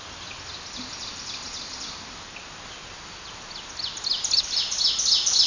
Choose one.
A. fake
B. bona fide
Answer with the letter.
B